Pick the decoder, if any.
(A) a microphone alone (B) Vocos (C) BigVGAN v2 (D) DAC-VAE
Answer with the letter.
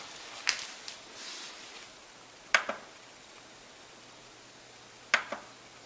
A